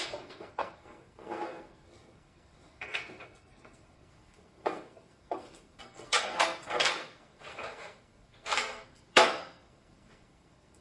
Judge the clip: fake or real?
fake